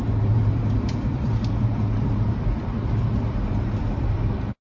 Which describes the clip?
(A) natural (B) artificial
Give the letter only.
B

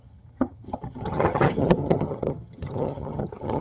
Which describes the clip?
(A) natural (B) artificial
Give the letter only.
B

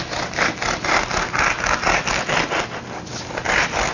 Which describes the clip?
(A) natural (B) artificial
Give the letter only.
A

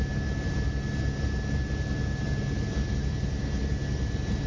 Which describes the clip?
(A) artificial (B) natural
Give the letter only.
B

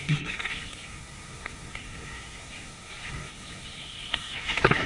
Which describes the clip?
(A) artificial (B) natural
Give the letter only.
A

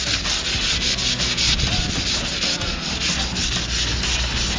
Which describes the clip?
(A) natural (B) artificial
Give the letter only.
A